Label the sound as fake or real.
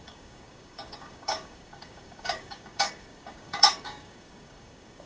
fake